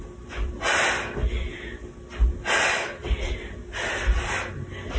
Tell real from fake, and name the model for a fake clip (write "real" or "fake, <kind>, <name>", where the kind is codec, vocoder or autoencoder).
real